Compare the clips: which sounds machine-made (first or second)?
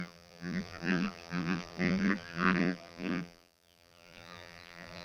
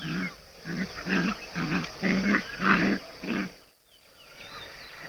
first